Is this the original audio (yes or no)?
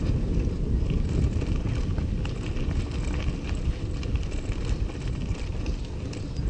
yes